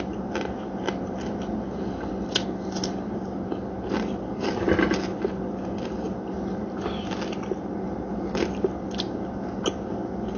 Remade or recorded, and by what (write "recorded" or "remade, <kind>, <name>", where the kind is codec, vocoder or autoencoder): recorded